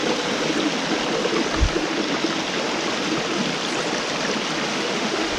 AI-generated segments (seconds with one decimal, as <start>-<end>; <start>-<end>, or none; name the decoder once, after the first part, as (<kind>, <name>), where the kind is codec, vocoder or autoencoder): 4.7-5.4 (autoencoder, DAC-VAE)